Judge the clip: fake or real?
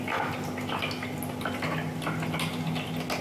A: real